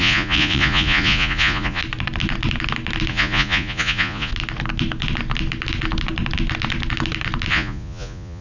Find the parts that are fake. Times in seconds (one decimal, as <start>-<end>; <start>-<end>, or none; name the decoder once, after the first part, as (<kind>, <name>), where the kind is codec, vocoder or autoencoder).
0.0-1.8 (vocoder, Vocos); 3.1-4.3; 7.5-8.4